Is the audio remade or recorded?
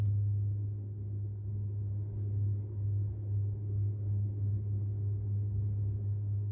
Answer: remade